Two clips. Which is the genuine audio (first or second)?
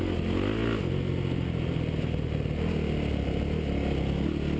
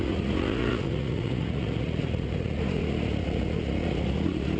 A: first